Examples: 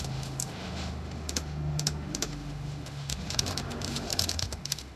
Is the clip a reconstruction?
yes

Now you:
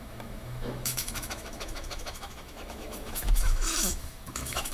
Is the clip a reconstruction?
yes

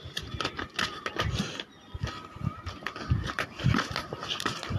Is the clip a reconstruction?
no